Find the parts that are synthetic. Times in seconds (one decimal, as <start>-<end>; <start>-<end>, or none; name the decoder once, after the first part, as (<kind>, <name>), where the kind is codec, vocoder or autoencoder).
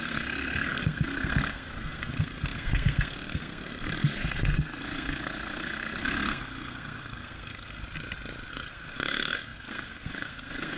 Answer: 0.0-7.8 (codec, SNAC); 8.5-10.8